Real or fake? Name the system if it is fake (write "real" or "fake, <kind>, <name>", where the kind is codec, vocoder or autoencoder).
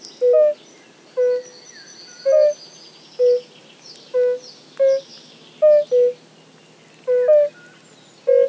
real